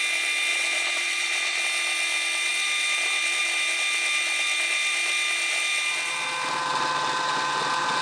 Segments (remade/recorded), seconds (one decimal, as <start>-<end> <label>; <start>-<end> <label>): 0.0-0.5 recorded; 0.5-1.6 remade; 1.6-8.0 recorded